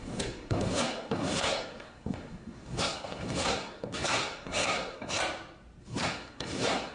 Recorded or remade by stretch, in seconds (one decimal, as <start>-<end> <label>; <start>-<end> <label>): 0.0-5.2 remade; 5.2-5.8 recorded; 5.8-6.9 remade